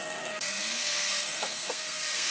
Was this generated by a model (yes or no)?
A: yes